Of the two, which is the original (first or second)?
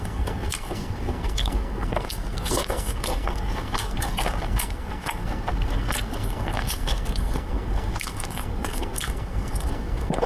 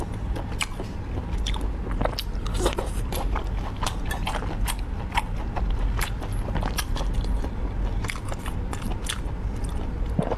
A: second